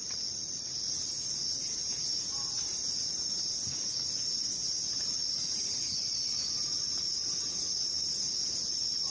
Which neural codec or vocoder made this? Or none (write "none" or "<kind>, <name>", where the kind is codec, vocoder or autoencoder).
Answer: none